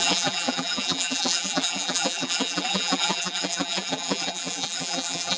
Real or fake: fake